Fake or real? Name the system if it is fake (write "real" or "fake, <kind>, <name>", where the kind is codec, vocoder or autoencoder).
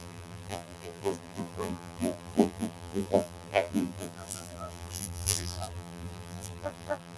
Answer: fake, vocoder, BigVGAN v2